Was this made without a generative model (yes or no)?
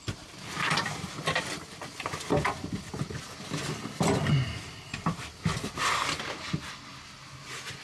yes